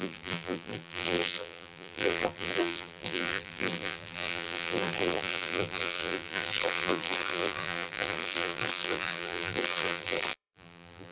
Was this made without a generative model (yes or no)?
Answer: no